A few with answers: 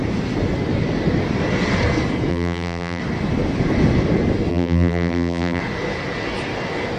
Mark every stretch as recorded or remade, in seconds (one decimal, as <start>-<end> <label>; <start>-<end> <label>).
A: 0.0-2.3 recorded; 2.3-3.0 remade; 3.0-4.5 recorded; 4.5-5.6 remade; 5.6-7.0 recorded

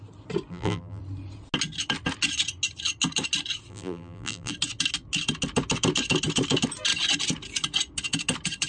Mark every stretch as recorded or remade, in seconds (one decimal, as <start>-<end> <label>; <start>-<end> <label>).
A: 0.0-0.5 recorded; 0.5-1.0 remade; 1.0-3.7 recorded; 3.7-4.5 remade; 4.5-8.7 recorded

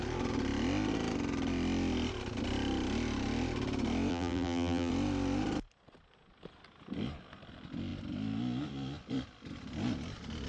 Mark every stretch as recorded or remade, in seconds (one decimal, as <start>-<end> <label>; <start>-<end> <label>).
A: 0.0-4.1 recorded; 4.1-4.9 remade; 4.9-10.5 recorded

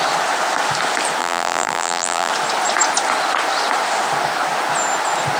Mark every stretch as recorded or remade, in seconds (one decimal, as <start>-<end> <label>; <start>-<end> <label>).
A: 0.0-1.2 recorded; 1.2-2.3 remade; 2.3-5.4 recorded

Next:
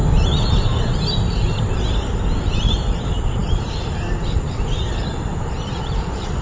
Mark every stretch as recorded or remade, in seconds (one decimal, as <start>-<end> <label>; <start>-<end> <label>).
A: 0.0-2.5 recorded; 2.5-6.4 remade

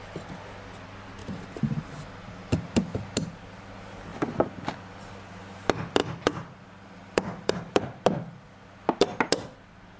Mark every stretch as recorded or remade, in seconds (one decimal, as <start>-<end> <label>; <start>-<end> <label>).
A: 0.0-1.2 recorded; 1.2-2.9 remade; 2.9-6.0 recorded; 6.0-7.5 remade; 7.5-10.0 recorded